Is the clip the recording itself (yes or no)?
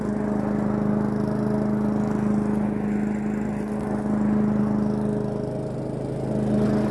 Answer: yes